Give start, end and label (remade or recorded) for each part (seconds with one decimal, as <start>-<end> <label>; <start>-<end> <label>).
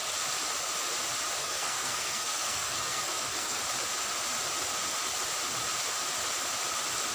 0.0-1.4 recorded; 1.4-3.6 remade; 3.6-7.1 recorded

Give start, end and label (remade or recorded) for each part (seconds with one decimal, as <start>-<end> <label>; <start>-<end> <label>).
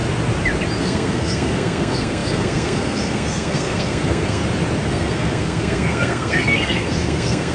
0.0-0.8 recorded; 0.8-4.4 remade; 4.4-4.9 recorded; 4.9-7.5 remade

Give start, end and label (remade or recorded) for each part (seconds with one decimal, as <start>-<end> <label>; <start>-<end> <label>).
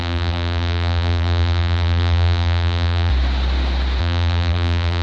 0.0-3.1 remade; 3.1-4.0 recorded; 4.0-5.0 remade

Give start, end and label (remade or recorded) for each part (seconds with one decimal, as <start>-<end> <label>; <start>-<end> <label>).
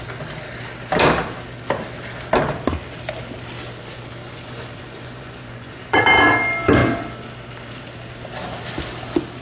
0.0-4.2 recorded; 4.2-6.0 remade; 6.0-9.4 recorded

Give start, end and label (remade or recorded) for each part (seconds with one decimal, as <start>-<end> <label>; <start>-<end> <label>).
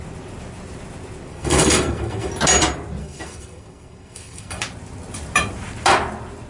0.0-1.3 recorded; 1.3-2.3 remade; 2.3-3.0 recorded; 3.0-4.6 remade; 4.6-6.5 recorded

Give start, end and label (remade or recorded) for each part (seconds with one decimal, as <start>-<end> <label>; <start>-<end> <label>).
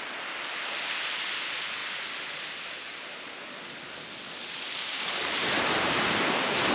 0.0-6.7 recorded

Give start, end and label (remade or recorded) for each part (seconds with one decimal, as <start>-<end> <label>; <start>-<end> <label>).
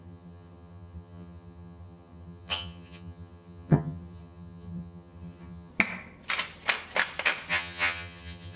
0.0-5.7 remade; 5.7-7.5 recorded; 7.5-8.6 remade